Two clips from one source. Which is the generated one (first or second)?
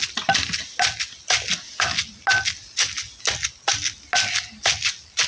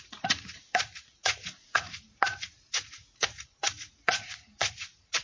second